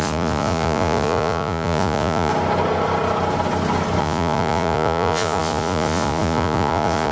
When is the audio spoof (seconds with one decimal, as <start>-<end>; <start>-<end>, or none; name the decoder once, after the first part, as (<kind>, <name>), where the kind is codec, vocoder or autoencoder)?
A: 0.0-2.3 (vocoder, Vocos); 4.0-7.1